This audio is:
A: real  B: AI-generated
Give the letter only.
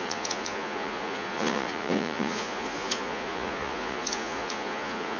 B